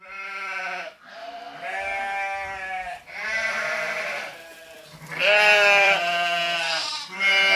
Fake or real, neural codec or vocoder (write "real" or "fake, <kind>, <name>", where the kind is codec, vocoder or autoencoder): fake, vocoder, BigVGAN v2